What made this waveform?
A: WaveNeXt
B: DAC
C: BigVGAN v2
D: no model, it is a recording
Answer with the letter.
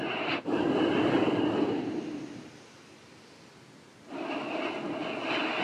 D